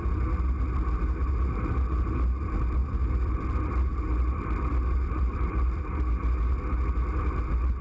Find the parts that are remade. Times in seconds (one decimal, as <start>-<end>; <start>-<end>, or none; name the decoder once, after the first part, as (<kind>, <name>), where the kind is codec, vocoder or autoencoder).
2.8-5.8 (vocoder, BigVGAN v2)